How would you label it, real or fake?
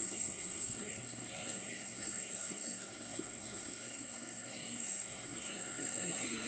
fake